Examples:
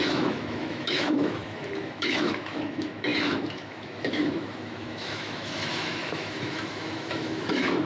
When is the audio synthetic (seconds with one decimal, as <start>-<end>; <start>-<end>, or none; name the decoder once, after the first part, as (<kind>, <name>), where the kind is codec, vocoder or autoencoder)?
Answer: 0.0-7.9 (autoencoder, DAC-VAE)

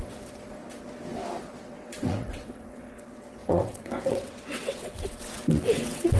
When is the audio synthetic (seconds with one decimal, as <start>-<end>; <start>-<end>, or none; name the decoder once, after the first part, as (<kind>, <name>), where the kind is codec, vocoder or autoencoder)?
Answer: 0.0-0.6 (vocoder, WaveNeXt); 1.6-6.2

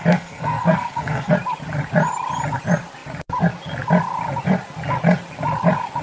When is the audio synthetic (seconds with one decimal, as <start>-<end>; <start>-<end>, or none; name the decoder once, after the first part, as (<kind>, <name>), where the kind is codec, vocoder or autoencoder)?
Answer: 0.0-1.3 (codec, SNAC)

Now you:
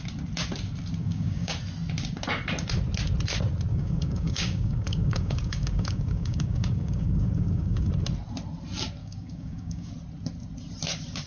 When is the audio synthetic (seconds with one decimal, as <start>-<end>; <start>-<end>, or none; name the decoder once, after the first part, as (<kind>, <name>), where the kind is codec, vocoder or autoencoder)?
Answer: 1.0-1.5 (codec, DAC); 3.7-7.9; 9.0-9.9

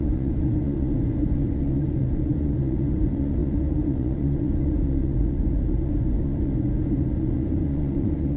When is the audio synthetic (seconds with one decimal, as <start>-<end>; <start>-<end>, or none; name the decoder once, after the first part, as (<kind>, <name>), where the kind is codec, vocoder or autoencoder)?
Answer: 0.0-8.4 (vocoder, Vocos)

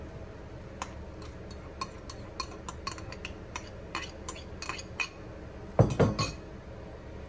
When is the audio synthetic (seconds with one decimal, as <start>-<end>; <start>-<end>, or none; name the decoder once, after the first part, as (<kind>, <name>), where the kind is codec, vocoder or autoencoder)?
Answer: none

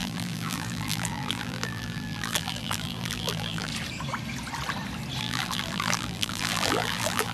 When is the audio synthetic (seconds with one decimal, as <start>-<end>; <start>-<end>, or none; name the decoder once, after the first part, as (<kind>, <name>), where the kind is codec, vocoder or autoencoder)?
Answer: 0.0-3.7 (vocoder, BigVGAN v2); 5.2-7.3

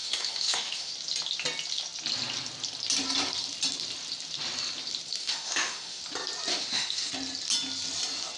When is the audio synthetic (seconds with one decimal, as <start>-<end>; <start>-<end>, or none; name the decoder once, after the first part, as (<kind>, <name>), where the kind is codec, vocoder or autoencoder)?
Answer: 0.0-0.9 (autoencoder, DAC-VAE); 5.2-6.0; 6.5-7.1